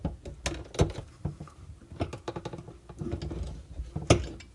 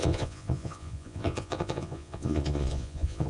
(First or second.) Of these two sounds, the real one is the first